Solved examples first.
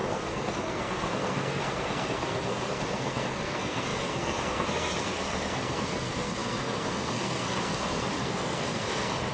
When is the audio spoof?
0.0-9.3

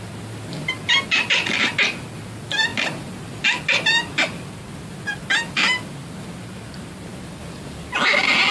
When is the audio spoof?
none

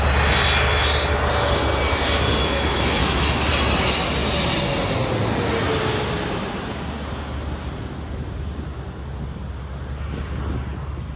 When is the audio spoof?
2.4-3.5

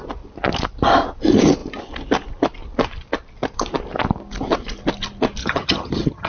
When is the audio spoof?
5.4-6.3

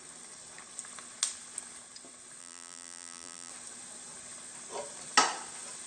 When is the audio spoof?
2.4-3.5

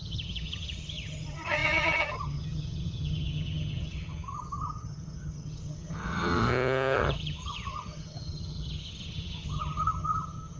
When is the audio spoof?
0.0-10.6